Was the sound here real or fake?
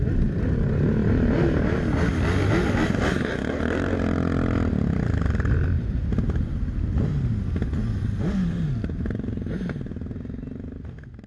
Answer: real